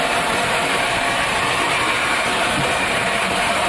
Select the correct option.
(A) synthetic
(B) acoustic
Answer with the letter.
A